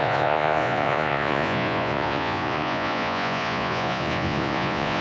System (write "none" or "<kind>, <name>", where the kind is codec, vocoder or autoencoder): vocoder, Vocos